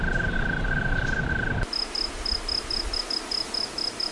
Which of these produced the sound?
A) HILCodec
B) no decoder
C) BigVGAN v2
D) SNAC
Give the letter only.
B